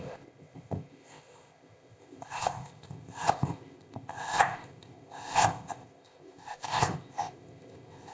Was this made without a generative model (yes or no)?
no